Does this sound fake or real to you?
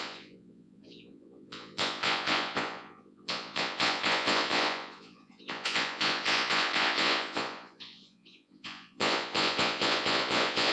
fake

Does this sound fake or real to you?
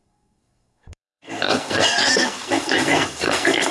fake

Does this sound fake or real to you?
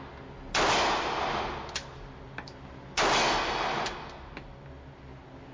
real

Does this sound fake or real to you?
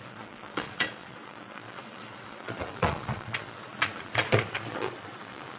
fake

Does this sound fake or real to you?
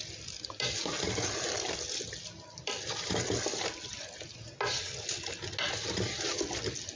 real